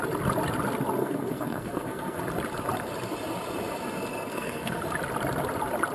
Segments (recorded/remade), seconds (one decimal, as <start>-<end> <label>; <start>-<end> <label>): 0.0-1.0 recorded; 1.0-2.2 remade; 2.2-4.3 recorded; 4.3-4.8 remade; 4.8-5.9 recorded

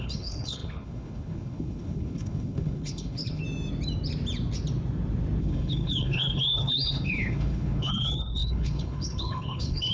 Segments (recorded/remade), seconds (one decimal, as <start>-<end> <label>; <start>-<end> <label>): 0.0-3.4 remade; 3.4-5.4 recorded; 5.4-9.9 remade

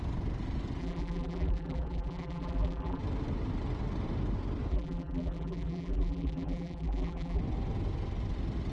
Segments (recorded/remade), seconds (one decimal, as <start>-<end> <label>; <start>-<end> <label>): 0.0-0.8 recorded; 0.8-3.0 remade; 3.0-4.7 recorded; 4.7-7.4 remade; 7.4-8.7 recorded

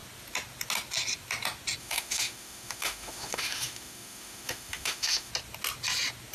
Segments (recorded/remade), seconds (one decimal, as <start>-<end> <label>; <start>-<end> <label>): 0.0-1.8 recorded; 1.8-5.3 remade; 5.3-6.3 recorded

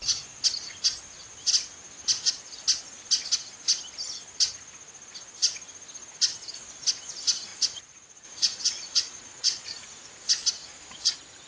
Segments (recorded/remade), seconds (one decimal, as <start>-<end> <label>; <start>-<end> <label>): 0.0-7.5 recorded; 7.5-10.1 remade; 10.1-10.6 recorded; 10.6-11.1 remade; 11.1-11.5 recorded

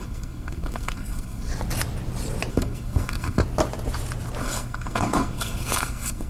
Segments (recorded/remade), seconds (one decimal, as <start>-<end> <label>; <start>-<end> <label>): 0.0-1.5 remade; 1.5-2.5 recorded; 2.5-3.4 remade; 3.4-4.4 recorded; 4.4-6.3 remade